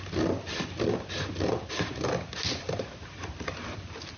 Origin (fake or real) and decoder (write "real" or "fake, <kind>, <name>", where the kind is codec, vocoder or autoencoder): real